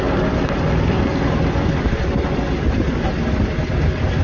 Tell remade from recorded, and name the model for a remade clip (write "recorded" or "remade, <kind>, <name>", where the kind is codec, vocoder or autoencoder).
recorded